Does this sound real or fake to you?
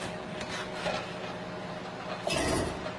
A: real